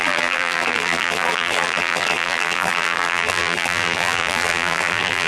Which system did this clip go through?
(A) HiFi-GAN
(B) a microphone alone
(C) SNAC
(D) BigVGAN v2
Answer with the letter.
D